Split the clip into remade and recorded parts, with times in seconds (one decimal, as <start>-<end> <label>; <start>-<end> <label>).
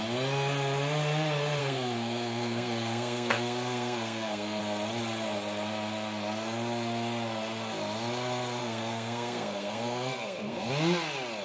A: 0.0-1.6 recorded; 1.6-4.6 remade; 4.6-8.6 recorded; 8.6-10.7 remade; 10.7-11.4 recorded